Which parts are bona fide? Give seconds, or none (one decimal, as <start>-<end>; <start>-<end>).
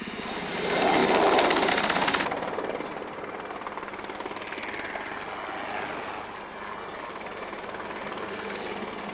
0.0-9.1